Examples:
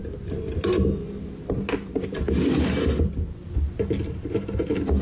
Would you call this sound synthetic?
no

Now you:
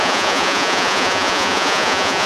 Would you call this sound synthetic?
yes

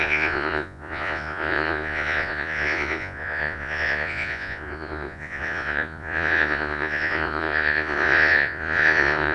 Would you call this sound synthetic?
yes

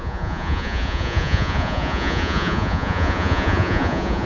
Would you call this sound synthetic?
yes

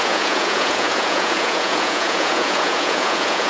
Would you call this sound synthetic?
yes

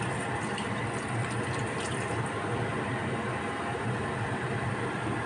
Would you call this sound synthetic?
no